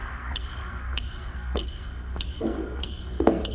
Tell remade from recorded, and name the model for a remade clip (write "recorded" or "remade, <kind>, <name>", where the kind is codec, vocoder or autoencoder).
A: remade, codec, SNAC